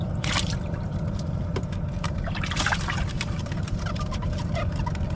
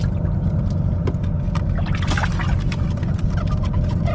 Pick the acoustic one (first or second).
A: second